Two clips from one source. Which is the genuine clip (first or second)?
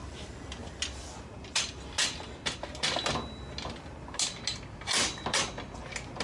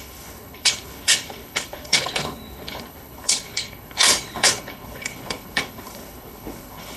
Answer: first